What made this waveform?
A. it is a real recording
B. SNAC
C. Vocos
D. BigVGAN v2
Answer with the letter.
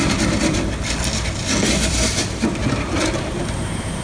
D